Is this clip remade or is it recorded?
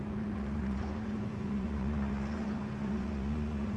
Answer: remade